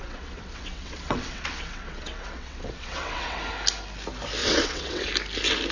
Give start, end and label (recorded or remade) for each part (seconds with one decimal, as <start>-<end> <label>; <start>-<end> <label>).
0.0-3.4 remade; 3.4-4.4 recorded; 4.4-5.1 remade; 5.1-5.7 recorded